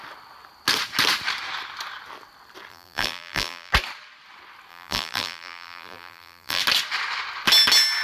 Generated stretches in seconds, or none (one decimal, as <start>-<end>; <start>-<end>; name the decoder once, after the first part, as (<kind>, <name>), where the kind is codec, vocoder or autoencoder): 2.7-3.7 (vocoder, BigVGAN v2); 4.7-6.6